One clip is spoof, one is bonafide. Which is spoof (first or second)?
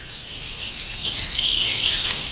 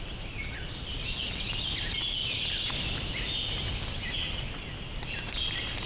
first